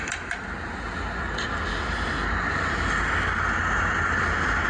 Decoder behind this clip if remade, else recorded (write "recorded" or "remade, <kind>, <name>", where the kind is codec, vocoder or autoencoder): recorded